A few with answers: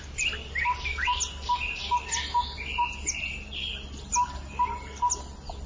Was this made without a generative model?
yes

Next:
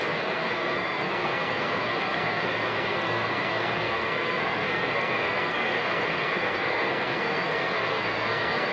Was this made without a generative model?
no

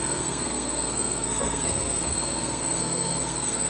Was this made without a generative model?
no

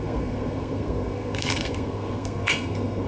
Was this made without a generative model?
no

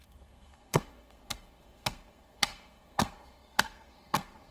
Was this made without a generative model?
no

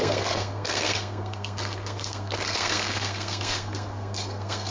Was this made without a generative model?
no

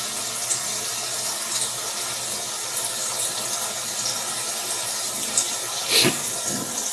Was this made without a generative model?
yes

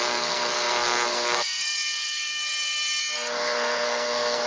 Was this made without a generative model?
no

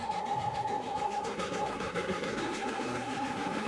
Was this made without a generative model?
no